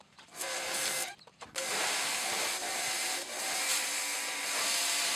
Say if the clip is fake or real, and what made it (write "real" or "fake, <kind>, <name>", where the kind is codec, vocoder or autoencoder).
fake, vocoder, BigVGAN v2